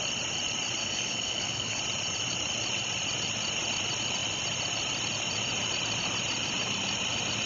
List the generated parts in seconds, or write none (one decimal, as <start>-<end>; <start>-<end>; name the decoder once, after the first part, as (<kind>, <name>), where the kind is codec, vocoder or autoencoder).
0.8-1.8 (codec, DAC)

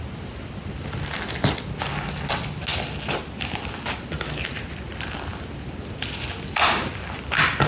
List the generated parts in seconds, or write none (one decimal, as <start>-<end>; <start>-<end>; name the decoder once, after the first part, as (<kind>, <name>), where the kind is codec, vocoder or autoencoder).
none

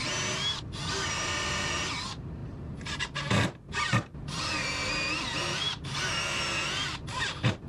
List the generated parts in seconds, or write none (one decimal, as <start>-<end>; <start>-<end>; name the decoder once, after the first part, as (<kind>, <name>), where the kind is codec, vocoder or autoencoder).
none

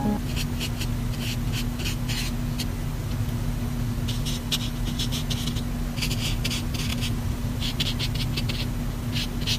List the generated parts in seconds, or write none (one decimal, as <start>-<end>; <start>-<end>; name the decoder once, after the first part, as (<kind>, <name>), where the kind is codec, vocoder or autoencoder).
6.9-8.0 (vocoder, BigVGAN v2)